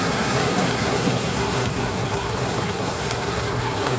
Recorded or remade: remade